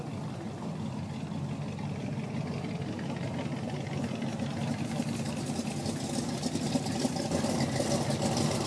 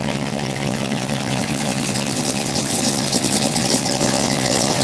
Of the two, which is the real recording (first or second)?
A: first